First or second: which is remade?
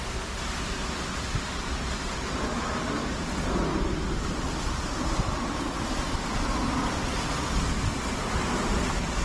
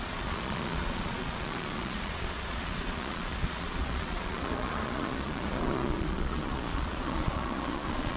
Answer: second